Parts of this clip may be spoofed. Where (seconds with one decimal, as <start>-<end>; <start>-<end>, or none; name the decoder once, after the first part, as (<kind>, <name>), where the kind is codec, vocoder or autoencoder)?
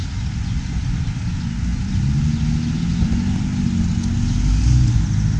none